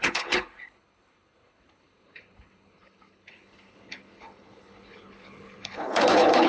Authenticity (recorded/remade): remade